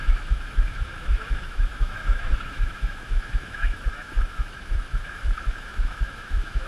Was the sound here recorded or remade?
remade